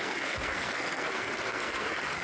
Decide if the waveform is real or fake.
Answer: fake